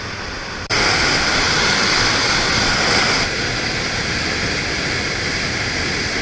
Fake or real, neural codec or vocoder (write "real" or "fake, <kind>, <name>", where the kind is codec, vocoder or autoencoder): real